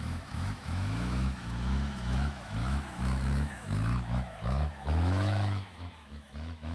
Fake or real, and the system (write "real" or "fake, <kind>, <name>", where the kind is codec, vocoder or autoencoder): fake, autoencoder, DAC-VAE